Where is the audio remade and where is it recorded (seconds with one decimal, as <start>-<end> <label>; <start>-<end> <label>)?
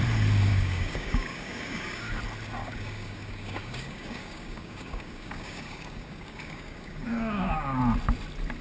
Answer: 0.0-0.5 recorded; 0.5-2.1 remade; 2.1-2.6 recorded; 2.6-7.8 remade; 7.8-8.6 recorded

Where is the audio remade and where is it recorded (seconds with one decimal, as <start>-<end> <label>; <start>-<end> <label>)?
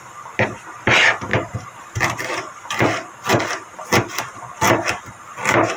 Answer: 0.0-1.3 recorded; 1.3-2.3 remade; 2.3-5.8 recorded